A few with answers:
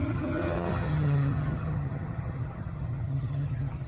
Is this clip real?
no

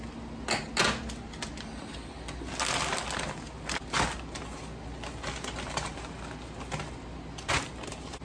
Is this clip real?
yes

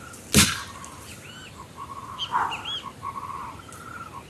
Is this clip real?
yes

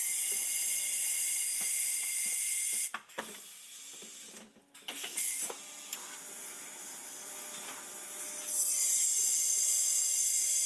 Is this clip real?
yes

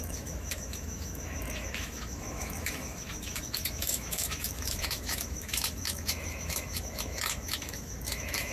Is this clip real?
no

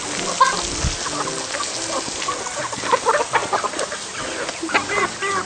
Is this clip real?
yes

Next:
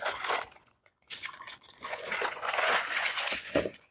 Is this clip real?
no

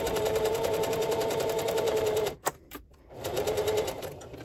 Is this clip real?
no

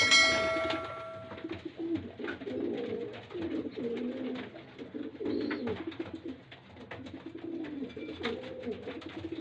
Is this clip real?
yes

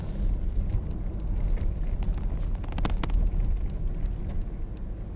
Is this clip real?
yes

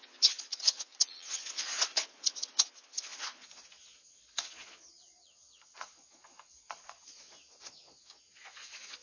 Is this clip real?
no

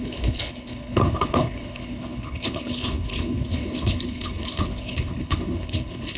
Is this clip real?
no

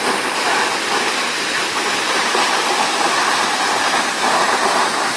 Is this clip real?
yes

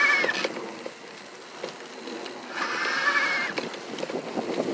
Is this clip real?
yes